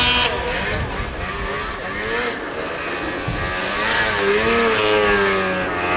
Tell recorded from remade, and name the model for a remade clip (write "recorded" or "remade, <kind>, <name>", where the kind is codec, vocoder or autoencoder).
recorded